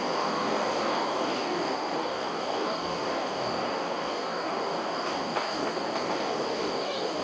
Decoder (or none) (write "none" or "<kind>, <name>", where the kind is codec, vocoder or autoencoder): codec, DAC